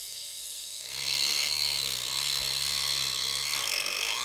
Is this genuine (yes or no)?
no